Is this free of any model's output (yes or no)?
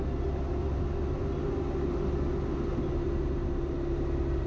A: yes